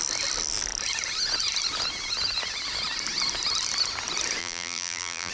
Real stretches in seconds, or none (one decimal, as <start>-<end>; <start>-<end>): 0.0-4.4